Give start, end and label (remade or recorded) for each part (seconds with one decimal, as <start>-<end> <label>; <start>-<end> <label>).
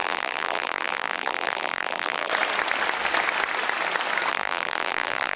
0.0-2.3 remade; 2.3-4.3 recorded; 4.3-5.4 remade